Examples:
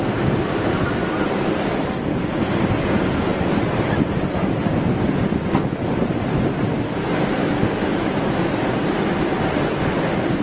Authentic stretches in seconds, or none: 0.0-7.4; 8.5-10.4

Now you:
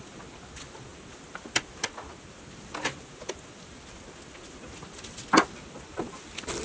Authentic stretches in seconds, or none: 0.0-6.6

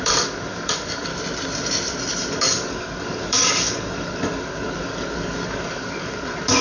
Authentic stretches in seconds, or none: 1.1-2.3

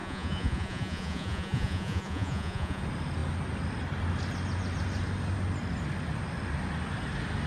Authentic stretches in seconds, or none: 2.8-7.5

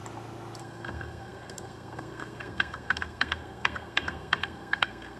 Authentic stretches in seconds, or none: 0.0-0.6

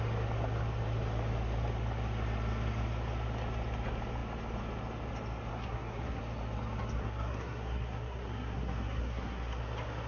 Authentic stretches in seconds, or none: 0.0-5.5; 6.2-7.0; 9.6-10.1

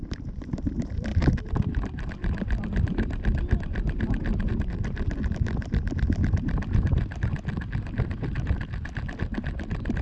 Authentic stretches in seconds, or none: 0.0-10.0

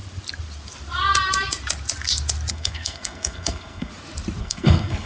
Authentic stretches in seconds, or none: 0.0-2.5; 3.9-4.4